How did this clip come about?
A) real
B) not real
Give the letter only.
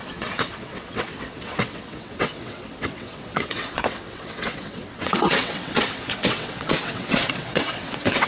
B